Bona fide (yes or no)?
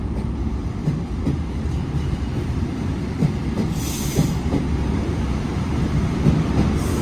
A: yes